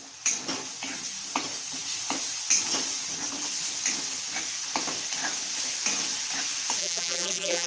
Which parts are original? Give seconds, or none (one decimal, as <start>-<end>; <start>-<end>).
0.0-6.8